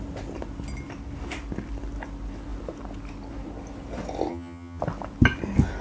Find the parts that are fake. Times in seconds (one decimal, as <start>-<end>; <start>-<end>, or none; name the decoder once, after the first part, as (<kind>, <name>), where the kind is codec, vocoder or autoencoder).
4.3-4.8 (vocoder, HiFi-GAN)